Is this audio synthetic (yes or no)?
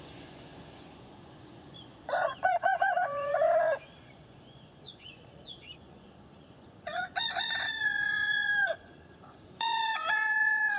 yes